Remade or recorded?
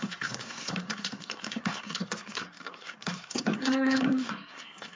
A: remade